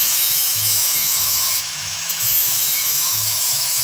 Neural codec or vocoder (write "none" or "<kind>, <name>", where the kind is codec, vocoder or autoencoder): autoencoder, DAC-VAE